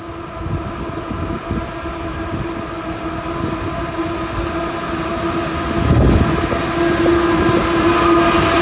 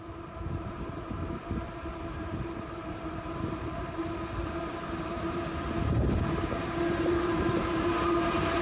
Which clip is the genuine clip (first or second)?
first